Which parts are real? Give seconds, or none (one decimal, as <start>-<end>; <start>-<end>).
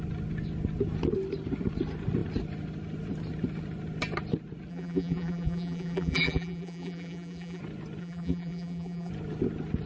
0.0-4.7; 7.6-8.0; 9.1-9.9